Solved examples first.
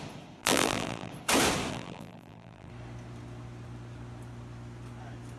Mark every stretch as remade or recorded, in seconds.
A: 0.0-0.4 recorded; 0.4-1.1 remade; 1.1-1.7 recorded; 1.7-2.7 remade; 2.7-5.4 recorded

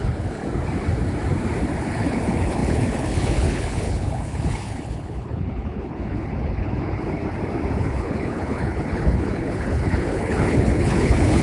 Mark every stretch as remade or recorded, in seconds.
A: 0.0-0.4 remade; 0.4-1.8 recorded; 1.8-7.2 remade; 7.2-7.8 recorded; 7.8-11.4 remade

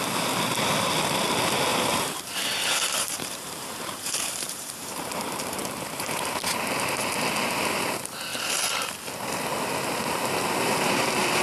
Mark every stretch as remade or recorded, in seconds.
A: 0.0-1.7 recorded; 1.7-6.3 remade; 6.3-11.4 recorded

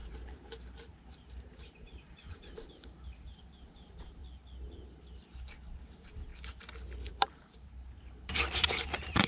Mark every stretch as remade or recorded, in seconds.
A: 0.0-4.2 remade; 4.2-5.8 recorded; 5.8-6.3 remade; 6.3-7.1 recorded; 7.1-9.3 remade

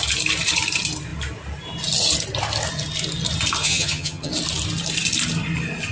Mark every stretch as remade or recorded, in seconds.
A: 0.0-3.6 recorded; 3.6-4.3 remade; 4.3-5.9 recorded

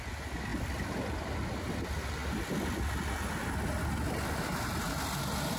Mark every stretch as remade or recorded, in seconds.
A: 0.0-5.6 recorded